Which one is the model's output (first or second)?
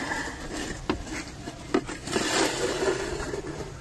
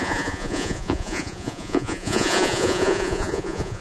second